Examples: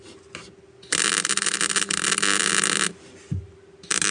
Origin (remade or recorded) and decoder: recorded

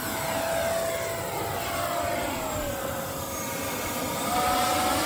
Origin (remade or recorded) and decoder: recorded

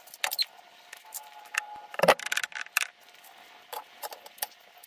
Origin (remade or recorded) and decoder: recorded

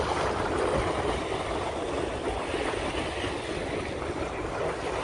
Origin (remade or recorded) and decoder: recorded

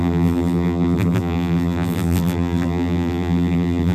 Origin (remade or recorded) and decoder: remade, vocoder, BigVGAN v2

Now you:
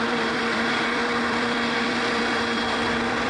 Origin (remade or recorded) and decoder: remade, vocoder, BigVGAN v2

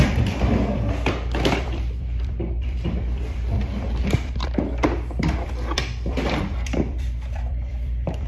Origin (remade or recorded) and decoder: remade, vocoder, BigVGAN v2